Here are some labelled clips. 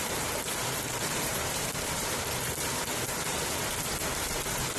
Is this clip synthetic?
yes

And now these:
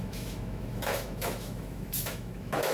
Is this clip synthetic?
yes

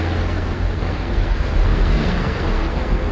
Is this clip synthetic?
yes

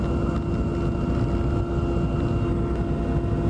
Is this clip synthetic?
no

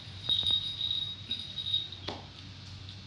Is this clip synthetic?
no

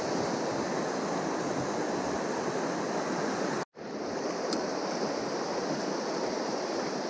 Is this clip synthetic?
no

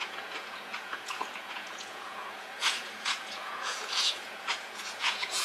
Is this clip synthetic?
yes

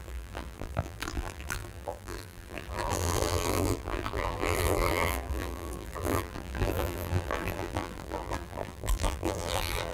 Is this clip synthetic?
yes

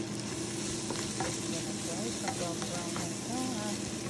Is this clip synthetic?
no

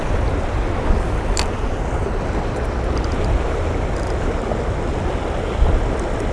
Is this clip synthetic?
no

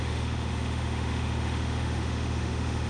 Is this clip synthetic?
yes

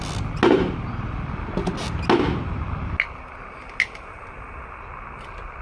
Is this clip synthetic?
no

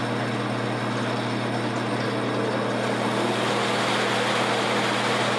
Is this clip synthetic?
no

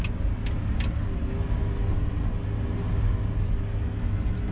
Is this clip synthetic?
no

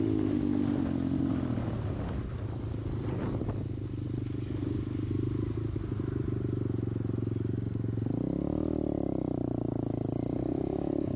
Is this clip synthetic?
no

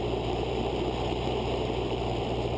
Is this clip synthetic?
yes